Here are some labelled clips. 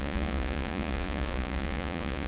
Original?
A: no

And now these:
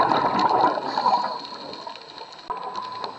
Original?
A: yes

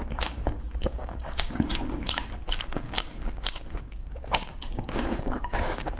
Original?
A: no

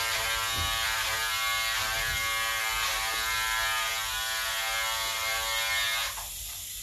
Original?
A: yes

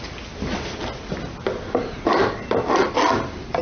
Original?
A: yes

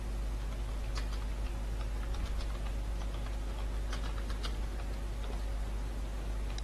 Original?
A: yes